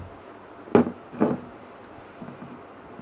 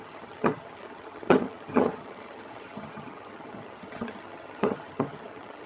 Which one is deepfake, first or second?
second